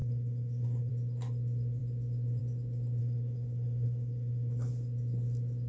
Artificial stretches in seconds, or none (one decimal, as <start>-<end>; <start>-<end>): 0.0-0.9; 3.0-4.7